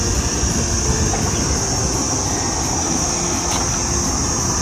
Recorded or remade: recorded